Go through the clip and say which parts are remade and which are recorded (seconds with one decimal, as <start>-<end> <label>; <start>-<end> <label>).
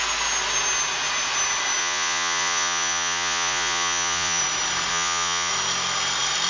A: 0.0-1.8 recorded; 1.8-4.4 remade; 4.4-4.9 recorded; 4.9-5.5 remade; 5.5-6.5 recorded